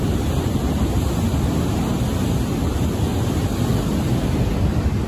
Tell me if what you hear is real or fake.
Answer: real